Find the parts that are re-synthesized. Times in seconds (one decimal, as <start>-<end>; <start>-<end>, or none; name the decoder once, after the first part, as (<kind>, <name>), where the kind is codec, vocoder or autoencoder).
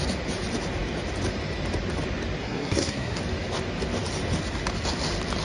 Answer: 2.4-3.2 (codec, SNAC)